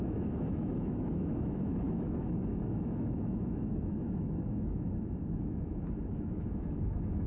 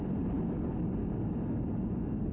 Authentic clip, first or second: second